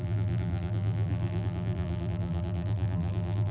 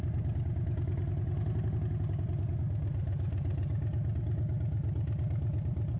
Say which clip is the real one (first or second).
second